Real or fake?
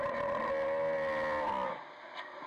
real